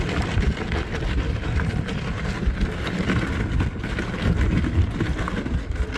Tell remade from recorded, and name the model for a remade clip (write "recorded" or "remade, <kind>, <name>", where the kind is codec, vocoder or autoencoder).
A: recorded